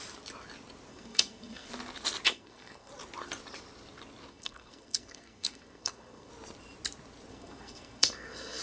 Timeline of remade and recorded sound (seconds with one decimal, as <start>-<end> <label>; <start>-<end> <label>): 0.0-0.9 recorded; 0.9-1.7 remade; 1.7-2.3 recorded; 2.3-2.9 remade; 2.9-4.3 recorded; 4.3-6.3 remade; 6.3-7.3 recorded; 7.3-8.6 remade

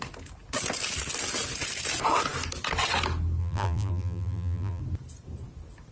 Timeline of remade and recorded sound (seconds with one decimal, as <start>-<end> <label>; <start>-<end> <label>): 0.0-3.4 recorded; 3.4-4.8 remade; 4.8-5.9 recorded

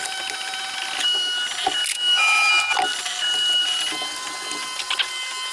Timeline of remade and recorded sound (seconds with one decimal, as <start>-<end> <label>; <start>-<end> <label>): 0.0-1.9 recorded; 1.9-2.5 remade; 2.5-5.5 recorded

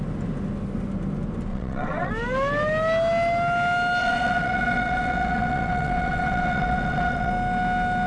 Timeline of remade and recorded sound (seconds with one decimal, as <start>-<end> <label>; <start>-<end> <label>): 0.0-1.5 recorded; 1.5-2.1 remade; 2.1-4.0 recorded; 4.0-7.3 remade; 7.3-8.1 recorded

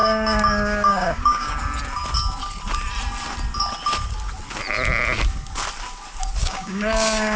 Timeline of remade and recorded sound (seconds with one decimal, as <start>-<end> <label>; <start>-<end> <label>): 0.0-1.6 remade; 1.6-6.4 recorded; 6.4-7.4 remade

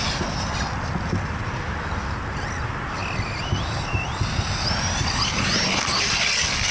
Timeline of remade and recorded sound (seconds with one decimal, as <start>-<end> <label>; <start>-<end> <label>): 0.0-6.7 recorded

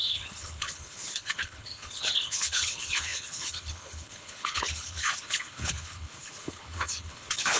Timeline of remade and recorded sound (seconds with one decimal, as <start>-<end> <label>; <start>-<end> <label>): 0.0-7.6 remade

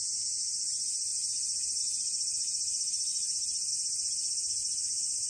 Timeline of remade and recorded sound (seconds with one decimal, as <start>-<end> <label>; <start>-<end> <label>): 0.0-4.6 recorded; 4.6-5.3 remade